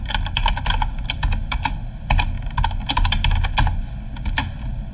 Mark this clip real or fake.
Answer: real